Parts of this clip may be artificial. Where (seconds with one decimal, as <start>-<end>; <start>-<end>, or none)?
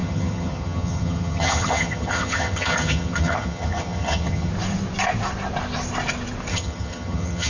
0.0-4.5; 6.5-7.5